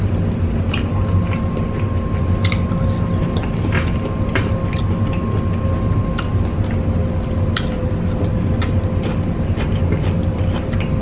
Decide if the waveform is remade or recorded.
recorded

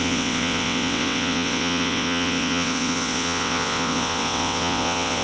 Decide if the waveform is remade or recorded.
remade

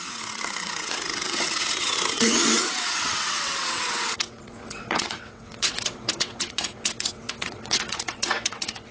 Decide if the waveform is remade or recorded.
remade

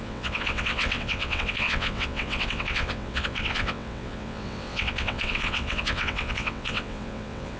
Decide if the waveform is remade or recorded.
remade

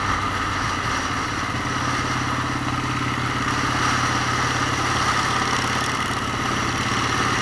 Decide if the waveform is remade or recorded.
recorded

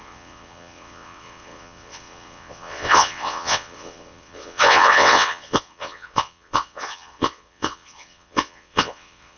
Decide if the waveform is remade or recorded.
remade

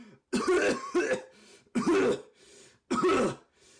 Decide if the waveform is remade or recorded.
recorded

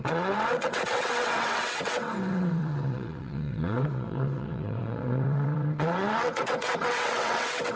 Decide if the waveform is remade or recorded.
remade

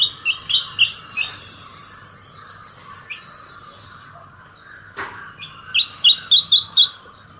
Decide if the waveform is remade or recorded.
recorded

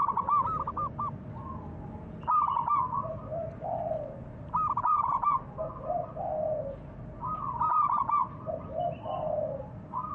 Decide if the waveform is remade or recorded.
recorded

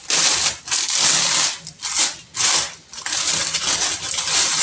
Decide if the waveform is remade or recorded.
recorded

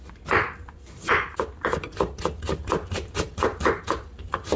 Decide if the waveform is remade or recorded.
recorded